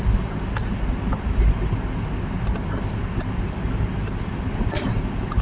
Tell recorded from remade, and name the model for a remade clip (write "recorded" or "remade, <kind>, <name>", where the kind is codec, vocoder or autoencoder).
recorded